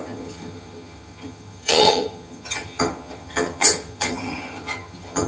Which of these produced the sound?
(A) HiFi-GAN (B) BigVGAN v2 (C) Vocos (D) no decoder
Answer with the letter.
A